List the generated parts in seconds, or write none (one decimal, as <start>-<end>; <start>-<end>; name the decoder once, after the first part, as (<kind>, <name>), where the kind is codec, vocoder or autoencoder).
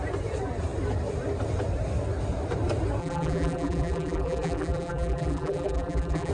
3.0-6.3 (vocoder, BigVGAN v2)